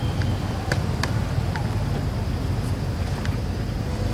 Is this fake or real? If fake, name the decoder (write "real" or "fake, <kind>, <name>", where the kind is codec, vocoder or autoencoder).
real